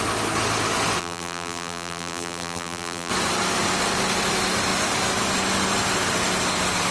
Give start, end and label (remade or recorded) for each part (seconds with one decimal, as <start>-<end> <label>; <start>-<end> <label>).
0.0-1.0 recorded; 1.0-3.1 remade; 3.1-6.9 recorded